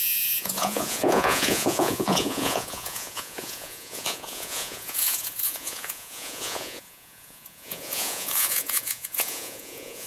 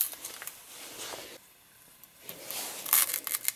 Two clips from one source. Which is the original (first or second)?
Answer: second